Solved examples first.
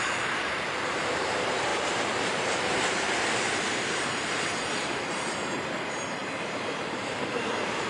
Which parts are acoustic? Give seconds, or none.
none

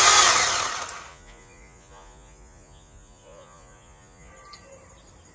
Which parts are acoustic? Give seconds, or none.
0.0-1.1; 4.3-5.3

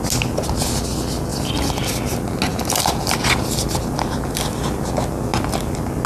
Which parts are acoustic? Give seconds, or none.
0.0-2.5; 3.2-6.1

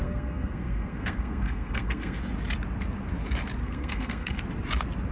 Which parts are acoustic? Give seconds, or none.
2.2-3.6; 4.4-5.1

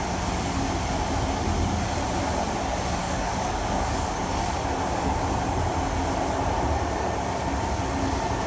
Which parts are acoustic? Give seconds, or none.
0.0-3.0; 4.5-8.5

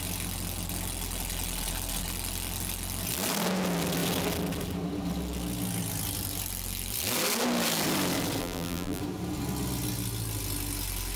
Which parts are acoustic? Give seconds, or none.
0.0-8.4; 9.0-11.2